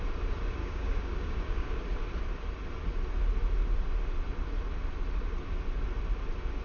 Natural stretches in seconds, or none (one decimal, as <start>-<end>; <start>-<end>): 0.0-0.6; 1.8-6.6